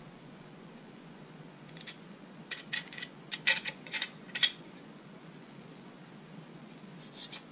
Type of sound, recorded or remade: remade